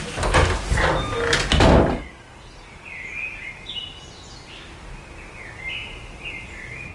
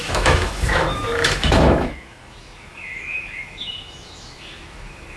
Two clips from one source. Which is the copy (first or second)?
second